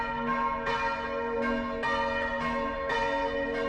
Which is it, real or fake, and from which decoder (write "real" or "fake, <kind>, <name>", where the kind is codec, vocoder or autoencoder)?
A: real